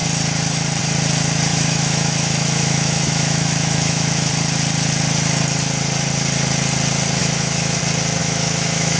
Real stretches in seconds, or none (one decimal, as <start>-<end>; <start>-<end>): 0.0-1.5; 4.3-7.2; 7.8-8.2